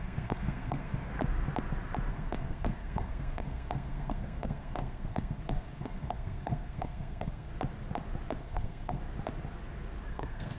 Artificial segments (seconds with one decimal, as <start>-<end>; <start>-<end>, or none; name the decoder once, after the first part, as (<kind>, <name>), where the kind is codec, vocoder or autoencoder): 0.0-1.1 (codec, SNAC); 2.1-7.5; 8.4-9.0; 10.1-10.6